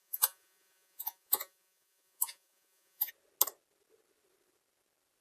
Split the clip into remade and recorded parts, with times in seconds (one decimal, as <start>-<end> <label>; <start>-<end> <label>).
0.0-3.1 remade; 3.1-5.2 recorded